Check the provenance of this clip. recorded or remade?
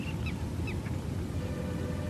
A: recorded